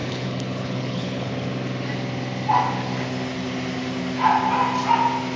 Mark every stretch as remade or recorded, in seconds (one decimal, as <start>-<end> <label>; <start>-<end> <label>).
0.0-1.3 remade; 1.3-5.4 recorded